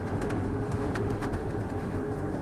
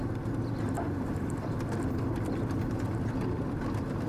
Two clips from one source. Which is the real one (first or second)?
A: second